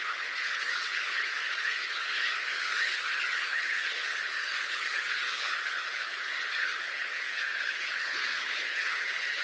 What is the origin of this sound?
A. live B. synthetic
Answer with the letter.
B